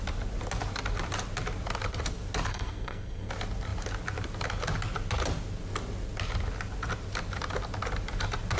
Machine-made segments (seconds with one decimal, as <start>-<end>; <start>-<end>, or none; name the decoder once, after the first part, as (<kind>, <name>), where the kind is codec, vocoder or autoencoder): 2.5-3.3 (codec, SNAC)